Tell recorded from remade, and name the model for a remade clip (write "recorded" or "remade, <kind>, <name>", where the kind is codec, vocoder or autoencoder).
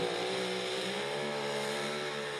remade, vocoder, BigVGAN v2